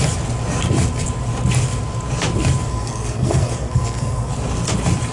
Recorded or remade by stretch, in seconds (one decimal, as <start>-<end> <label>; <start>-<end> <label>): 0.0-2.7 recorded; 2.7-4.3 remade; 4.3-5.1 recorded